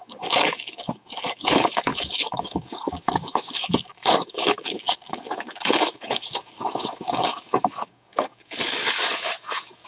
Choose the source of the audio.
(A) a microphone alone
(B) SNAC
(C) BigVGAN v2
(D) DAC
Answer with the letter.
D